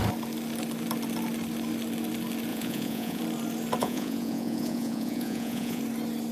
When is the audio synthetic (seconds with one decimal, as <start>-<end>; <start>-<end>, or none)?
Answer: 2.5-3.2; 3.8-5.8